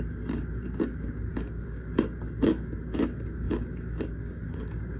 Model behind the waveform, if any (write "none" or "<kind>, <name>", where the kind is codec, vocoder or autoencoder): codec, DAC